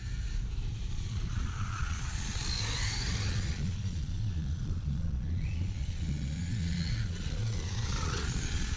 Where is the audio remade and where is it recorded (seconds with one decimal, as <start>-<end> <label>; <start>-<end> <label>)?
0.0-0.9 recorded; 0.9-2.4 remade; 2.4-3.3 recorded; 3.3-8.8 remade